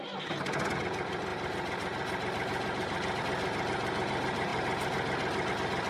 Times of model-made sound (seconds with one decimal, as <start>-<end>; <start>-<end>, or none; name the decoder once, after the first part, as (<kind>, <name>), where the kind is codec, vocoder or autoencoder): none